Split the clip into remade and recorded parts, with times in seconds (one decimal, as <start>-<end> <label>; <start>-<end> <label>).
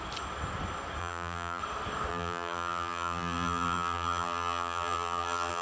0.0-1.0 recorded; 1.0-1.6 remade; 1.6-2.1 recorded; 2.1-5.6 remade